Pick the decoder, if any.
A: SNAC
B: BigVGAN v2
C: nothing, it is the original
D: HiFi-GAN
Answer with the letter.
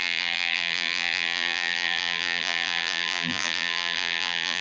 B